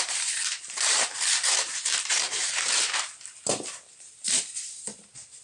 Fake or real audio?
fake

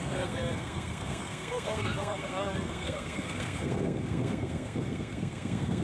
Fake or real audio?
fake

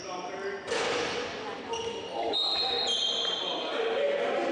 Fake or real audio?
real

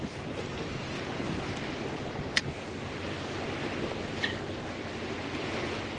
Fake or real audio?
real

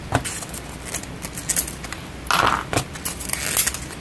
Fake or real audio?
real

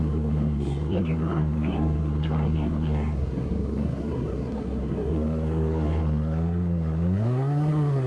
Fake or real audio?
fake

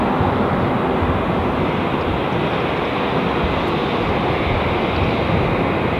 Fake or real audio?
real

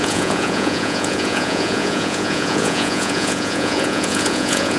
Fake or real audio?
fake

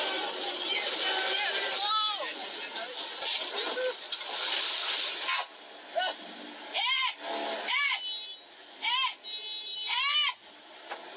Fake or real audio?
real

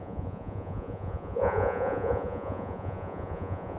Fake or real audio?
fake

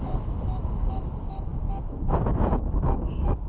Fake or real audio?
fake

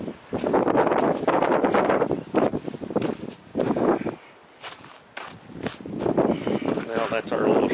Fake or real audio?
real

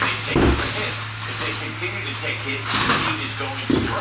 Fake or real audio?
real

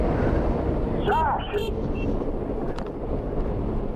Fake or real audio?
real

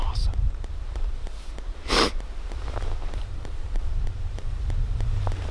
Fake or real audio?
fake